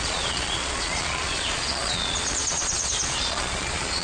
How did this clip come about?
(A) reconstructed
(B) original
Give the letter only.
A